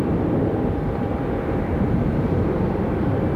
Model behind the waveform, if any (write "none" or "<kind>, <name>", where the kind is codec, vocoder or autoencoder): none